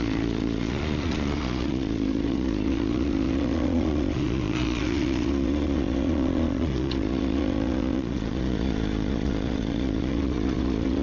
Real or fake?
fake